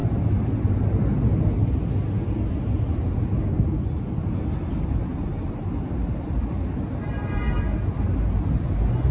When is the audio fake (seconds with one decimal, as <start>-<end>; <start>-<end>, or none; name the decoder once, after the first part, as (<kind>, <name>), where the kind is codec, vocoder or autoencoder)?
none